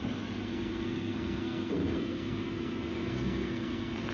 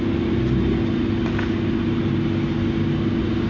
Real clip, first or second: second